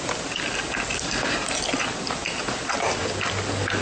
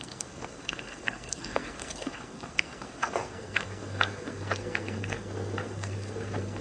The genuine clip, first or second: first